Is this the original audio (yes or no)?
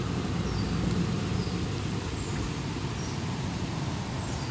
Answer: yes